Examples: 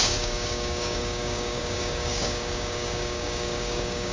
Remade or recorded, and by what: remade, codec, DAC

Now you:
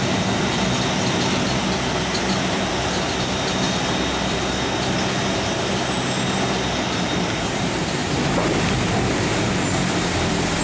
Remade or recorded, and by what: recorded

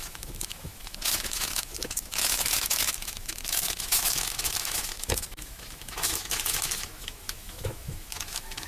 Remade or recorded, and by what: remade, autoencoder, DAC-VAE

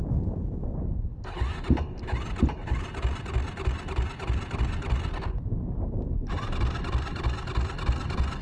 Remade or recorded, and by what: recorded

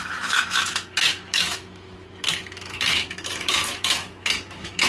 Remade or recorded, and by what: remade, autoencoder, DAC-VAE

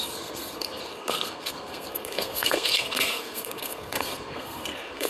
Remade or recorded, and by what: remade, codec, SNAC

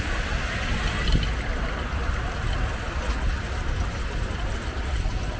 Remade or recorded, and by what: recorded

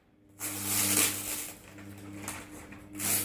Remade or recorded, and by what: recorded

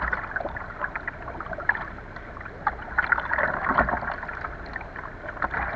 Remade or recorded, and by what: recorded